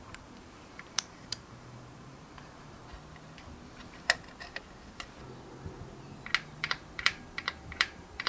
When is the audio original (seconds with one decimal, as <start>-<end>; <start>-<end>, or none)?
2.8-6.4